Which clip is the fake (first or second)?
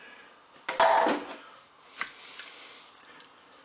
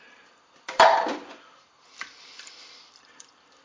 second